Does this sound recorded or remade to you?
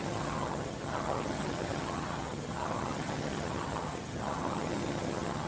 remade